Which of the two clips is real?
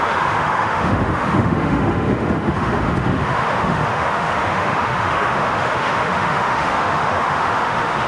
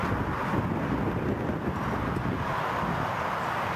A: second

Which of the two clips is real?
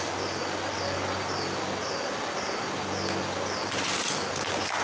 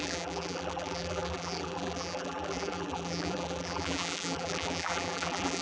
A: first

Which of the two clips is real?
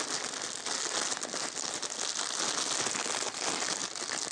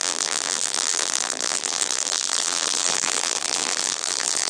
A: first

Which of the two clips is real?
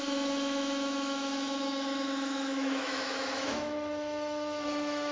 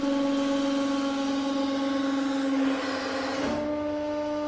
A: second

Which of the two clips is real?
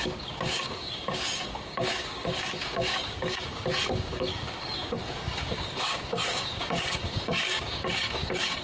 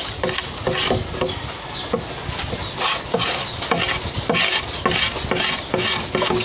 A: second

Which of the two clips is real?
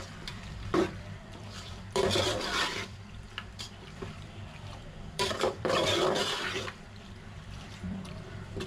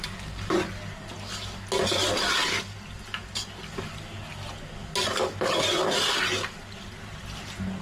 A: second